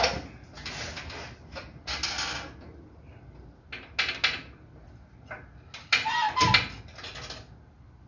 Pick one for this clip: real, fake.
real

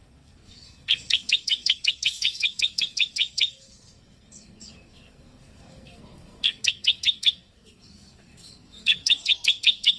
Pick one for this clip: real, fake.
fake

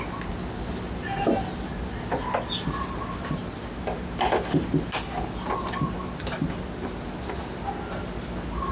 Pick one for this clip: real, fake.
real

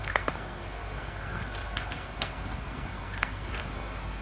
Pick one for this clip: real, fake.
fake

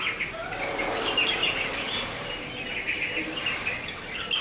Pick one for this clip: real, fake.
real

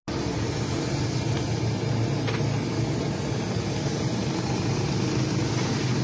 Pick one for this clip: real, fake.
real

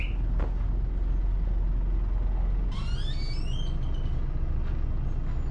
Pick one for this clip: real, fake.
real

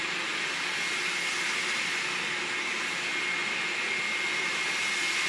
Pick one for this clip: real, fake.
real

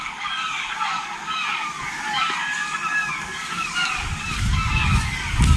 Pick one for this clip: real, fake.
fake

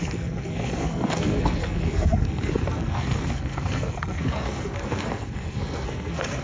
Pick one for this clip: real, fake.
fake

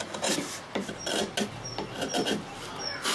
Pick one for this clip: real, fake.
real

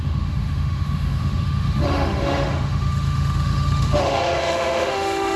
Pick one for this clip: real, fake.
fake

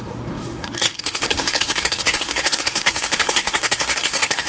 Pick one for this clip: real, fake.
fake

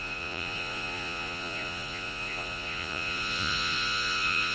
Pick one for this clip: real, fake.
fake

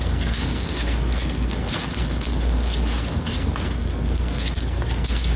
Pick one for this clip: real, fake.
fake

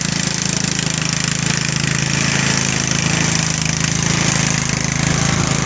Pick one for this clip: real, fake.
real